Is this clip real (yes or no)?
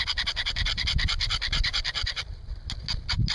yes